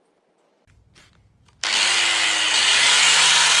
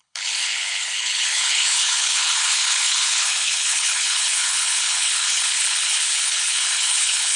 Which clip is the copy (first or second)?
second